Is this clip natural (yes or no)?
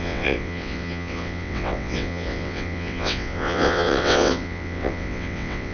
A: no